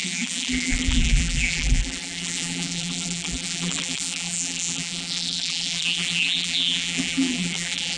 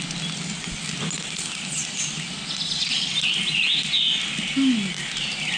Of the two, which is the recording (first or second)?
second